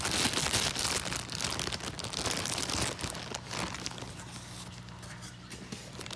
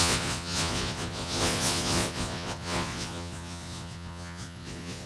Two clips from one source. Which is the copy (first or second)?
second